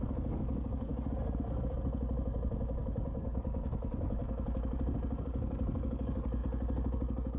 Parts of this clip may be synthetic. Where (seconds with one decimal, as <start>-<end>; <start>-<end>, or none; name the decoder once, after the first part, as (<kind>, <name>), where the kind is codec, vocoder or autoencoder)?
0.0-0.9 (codec, DAC); 2.8-4.2; 5.2-7.4